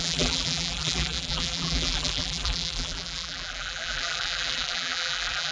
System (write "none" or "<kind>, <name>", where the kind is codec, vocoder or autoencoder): vocoder, BigVGAN v2